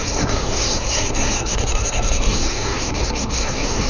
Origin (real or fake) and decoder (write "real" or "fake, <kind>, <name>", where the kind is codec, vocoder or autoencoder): fake, codec, SNAC